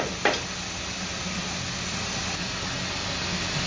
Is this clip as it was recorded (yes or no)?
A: yes